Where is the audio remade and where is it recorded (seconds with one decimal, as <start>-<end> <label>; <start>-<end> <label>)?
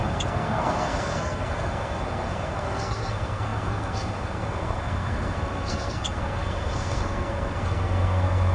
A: 0.0-8.5 remade